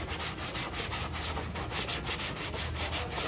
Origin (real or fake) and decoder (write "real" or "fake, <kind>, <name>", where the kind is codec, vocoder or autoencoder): real